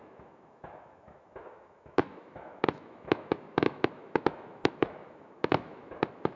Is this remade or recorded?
remade